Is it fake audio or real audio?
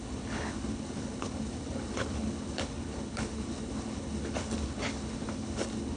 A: fake